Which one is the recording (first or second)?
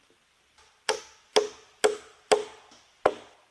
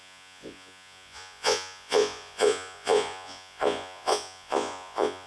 first